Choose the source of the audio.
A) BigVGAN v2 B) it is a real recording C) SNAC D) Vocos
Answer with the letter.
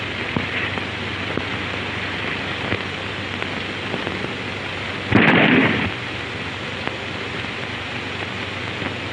B